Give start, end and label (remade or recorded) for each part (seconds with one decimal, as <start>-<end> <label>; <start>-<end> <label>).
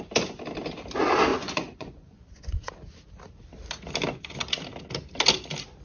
0.0-1.3 recorded; 1.3-2.7 remade; 2.7-5.8 recorded